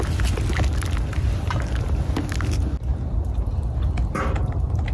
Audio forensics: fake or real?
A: real